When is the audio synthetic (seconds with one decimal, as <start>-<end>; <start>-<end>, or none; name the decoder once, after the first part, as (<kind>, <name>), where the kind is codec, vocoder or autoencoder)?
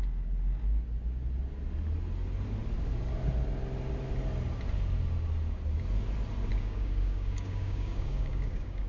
6.5-8.9 (codec, DAC)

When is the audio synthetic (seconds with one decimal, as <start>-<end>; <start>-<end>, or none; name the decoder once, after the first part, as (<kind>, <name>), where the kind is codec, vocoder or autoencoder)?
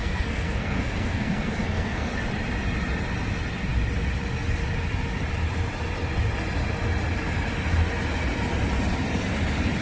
0.0-2.1 (codec, SNAC)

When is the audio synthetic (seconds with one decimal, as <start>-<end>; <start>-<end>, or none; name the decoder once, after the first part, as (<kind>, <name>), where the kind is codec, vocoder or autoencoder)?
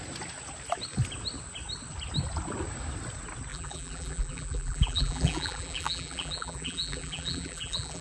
3.5-8.0 (vocoder, BigVGAN v2)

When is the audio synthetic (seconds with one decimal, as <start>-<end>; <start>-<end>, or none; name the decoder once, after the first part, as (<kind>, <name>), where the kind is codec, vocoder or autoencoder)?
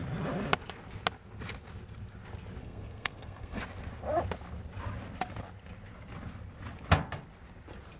2.6-3.6 (codec, SNAC)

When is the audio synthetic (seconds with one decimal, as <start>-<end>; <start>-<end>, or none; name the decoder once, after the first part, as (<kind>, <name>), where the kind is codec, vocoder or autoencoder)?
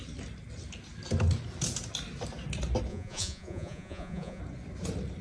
2.9-4.4 (vocoder, Vocos)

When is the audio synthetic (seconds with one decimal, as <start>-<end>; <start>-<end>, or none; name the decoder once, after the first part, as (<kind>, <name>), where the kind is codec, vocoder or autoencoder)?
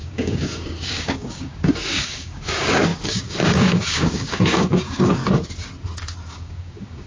0.0-5.2 (codec, DAC); 6.3-7.1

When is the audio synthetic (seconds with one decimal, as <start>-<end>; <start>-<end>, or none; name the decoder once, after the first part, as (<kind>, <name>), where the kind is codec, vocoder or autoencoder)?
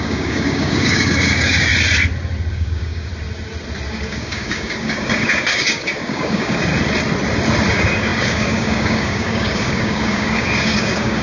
0.0-1.7 (codec, DAC); 2.5-3.1; 3.9-6.7; 7.7-11.2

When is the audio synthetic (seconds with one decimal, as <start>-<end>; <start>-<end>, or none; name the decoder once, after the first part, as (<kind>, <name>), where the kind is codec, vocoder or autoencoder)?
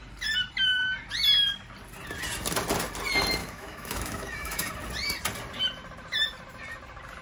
3.4-4.7 (autoencoder, DAC-VAE)